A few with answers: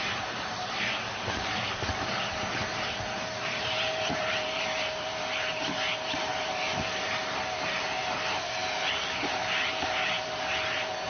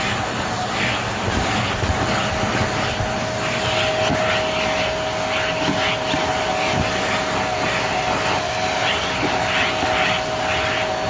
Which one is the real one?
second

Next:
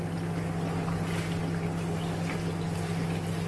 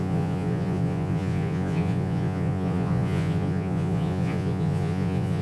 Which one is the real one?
first